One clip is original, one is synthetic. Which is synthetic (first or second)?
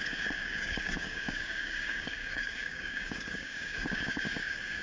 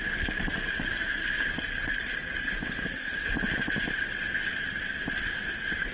first